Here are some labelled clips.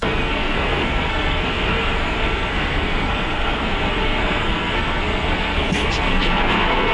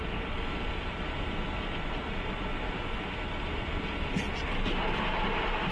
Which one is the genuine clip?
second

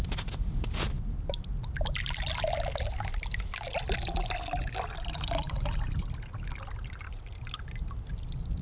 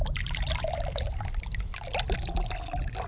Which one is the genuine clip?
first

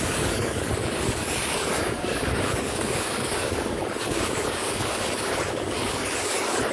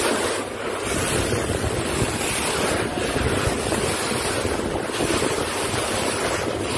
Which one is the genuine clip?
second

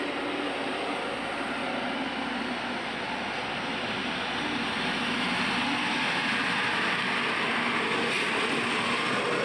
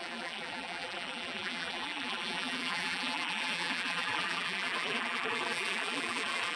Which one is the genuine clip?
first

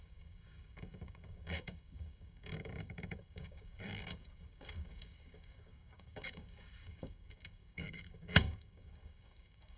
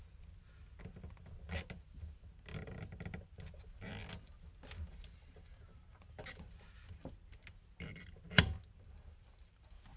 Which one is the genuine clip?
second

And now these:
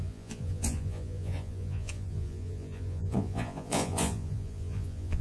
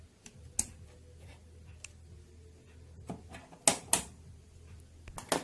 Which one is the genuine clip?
second